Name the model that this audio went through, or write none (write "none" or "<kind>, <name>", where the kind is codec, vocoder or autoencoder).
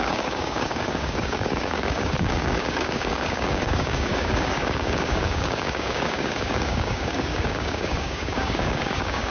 codec, DAC